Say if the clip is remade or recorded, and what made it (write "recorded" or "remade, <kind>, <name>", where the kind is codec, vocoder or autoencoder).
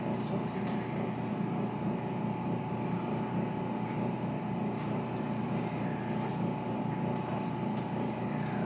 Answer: recorded